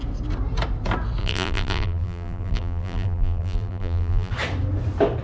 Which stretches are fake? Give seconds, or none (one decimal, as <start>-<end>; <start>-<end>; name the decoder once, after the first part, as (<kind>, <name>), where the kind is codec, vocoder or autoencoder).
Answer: 1.2-4.3 (vocoder, BigVGAN v2)